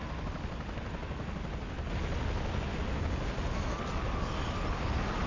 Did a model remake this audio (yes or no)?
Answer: no